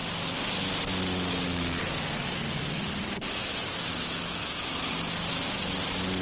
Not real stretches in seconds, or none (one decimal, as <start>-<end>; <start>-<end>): 3.9-4.7